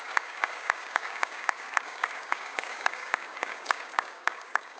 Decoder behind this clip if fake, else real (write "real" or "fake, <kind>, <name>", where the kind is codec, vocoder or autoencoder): fake, codec, DAC